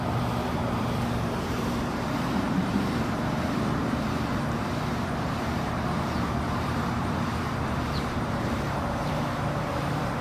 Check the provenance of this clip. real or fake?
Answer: fake